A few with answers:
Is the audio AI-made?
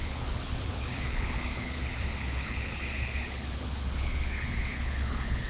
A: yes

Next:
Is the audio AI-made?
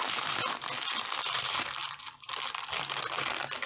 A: no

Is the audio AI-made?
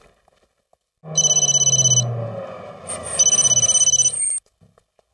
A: no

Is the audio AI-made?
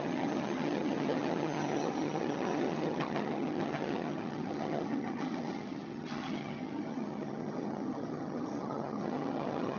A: yes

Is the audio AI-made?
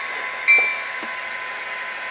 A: no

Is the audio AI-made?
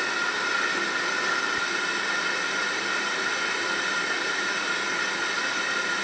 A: no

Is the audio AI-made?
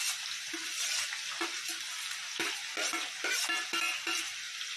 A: no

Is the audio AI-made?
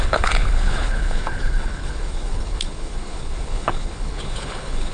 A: yes